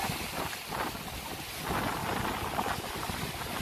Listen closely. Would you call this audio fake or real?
real